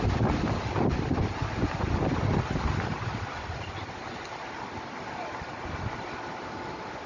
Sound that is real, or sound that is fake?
real